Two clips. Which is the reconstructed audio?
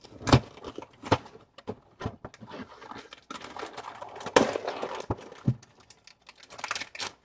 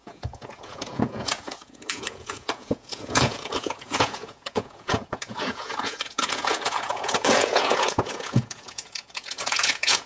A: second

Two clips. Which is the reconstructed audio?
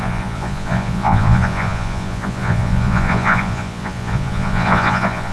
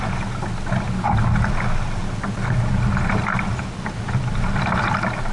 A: first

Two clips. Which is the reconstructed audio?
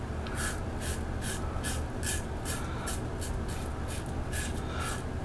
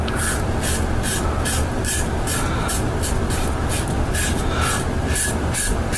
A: second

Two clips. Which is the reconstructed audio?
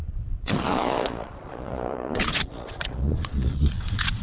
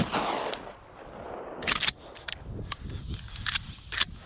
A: first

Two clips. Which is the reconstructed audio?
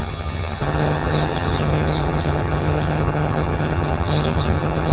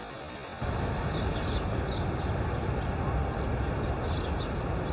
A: first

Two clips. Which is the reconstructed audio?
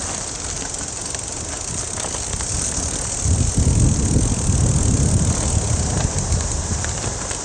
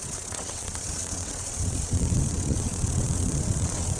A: second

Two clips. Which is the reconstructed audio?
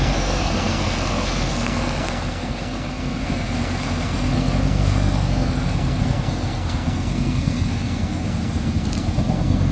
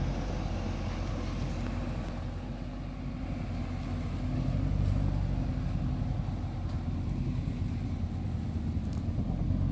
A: first